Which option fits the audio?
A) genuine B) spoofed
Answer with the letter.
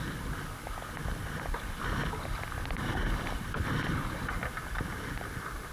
A